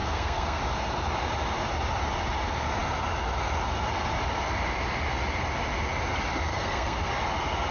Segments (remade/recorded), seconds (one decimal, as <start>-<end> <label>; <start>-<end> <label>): 0.0-0.6 remade; 0.6-6.5 recorded; 6.5-7.1 remade; 7.1-7.7 recorded